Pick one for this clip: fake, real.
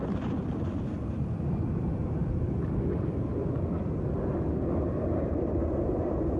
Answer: real